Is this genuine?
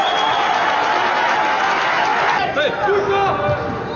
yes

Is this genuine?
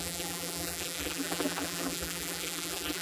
no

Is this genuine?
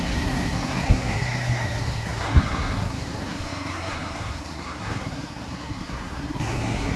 no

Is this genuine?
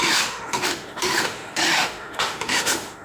no